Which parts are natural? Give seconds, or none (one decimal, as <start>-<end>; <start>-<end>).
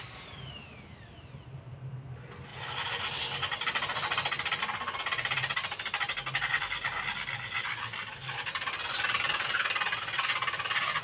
0.0-11.0